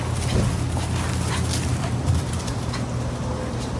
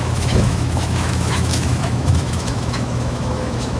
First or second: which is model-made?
second